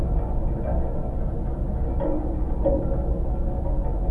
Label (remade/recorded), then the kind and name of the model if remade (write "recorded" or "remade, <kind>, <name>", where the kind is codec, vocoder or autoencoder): recorded